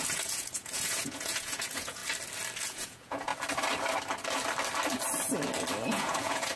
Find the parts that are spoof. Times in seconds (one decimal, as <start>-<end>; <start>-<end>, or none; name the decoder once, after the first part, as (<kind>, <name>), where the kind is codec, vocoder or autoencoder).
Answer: 0.0-2.0 (vocoder, Vocos); 2.6-3.3; 5.9-6.6